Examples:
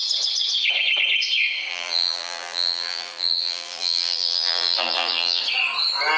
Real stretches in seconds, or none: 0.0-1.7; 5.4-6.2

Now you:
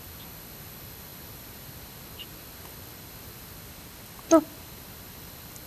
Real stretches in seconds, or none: 0.0-5.7

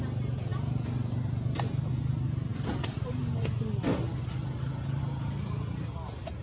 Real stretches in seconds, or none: 0.0-6.4

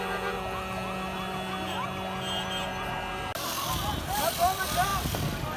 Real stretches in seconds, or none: 0.0-5.6

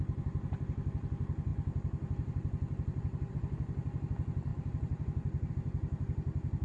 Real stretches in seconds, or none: 0.0-4.5; 5.5-6.6